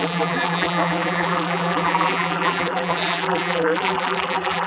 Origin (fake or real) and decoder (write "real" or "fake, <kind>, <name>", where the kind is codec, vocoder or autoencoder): fake, vocoder, BigVGAN v2